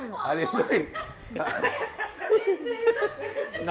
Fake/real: fake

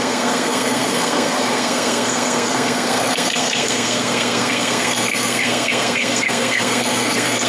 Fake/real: fake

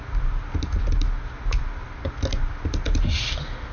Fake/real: real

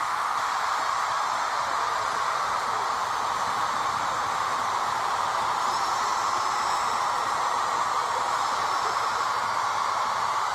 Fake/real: fake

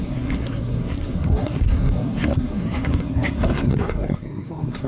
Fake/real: fake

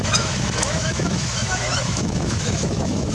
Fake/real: fake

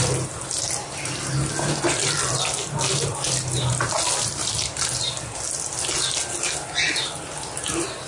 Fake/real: real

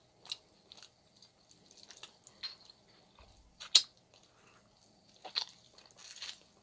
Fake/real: real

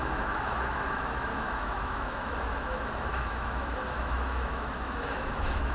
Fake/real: fake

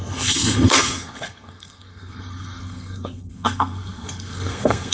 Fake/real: fake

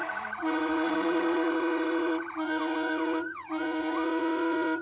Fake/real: fake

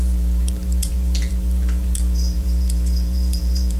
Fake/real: fake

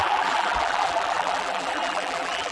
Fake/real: fake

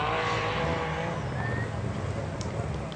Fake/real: real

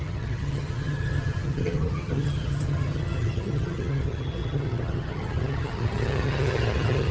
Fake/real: fake